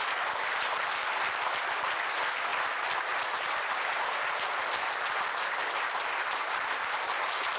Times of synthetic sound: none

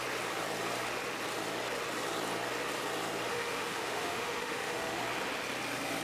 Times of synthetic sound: 3.3-5.0 (autoencoder, DAC-VAE)

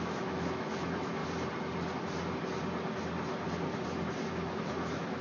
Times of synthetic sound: 0.0-1.2 (autoencoder, DAC-VAE); 4.3-5.2

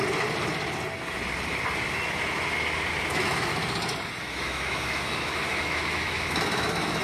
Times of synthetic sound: 3.0-3.5 (autoencoder, DAC-VAE); 4.2-7.0

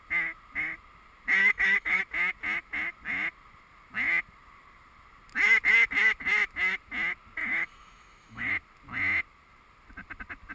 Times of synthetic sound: 1.4-2.0 (autoencoder, DAC-VAE); 7.4-8.5